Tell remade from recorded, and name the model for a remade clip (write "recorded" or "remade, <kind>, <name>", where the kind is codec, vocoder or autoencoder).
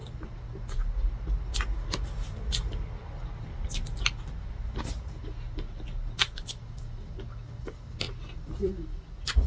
recorded